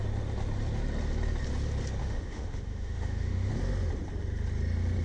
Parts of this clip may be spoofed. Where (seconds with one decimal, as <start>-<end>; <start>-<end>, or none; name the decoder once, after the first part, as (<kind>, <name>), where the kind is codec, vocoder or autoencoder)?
2.0-3.5 (autoencoder, DAC-VAE)